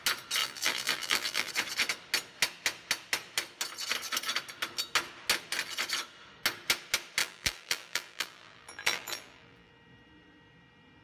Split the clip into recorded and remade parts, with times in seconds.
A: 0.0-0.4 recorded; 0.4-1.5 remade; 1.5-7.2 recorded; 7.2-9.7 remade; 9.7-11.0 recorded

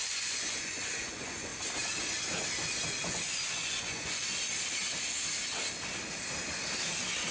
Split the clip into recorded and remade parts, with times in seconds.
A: 0.0-1.5 remade; 1.5-3.0 recorded; 3.0-4.2 remade; 4.2-7.3 recorded

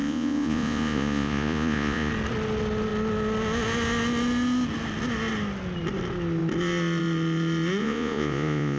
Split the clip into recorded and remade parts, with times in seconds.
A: 0.0-2.1 remade; 2.1-7.8 recorded; 7.8-8.8 remade

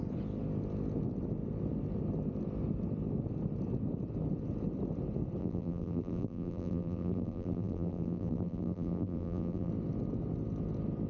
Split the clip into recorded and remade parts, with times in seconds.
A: 0.0-5.4 recorded; 5.4-9.7 remade; 9.7-11.1 recorded

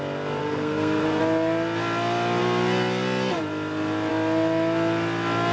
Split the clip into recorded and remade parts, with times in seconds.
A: 0.0-0.4 recorded; 0.4-1.2 remade; 1.2-5.5 recorded

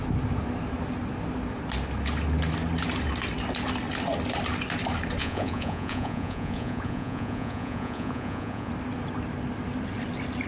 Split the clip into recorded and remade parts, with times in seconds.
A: 0.0-5.2 recorded; 5.2-8.7 remade; 8.7-10.5 recorded

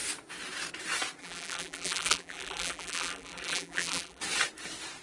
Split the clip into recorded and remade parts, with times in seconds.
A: 0.0-1.2 recorded; 1.2-4.2 remade; 4.2-5.0 recorded

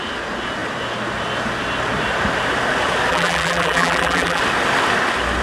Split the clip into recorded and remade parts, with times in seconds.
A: 0.0-3.1 recorded; 3.1-4.4 remade; 4.4-5.4 recorded